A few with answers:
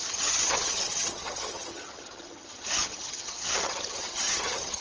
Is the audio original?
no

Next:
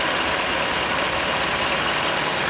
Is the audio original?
yes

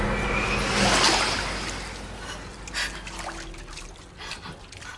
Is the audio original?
yes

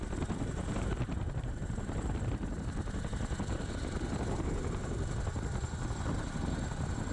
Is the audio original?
yes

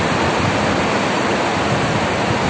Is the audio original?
yes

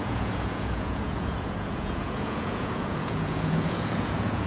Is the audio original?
no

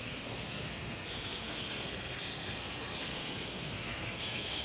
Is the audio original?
no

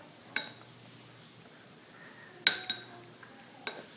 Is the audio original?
yes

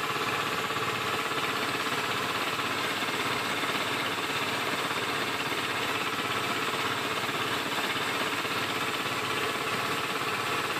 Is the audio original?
yes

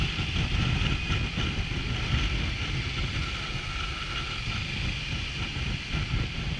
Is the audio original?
yes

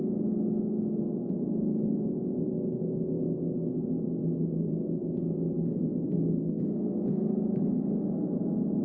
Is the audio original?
no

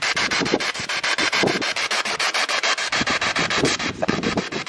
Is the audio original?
no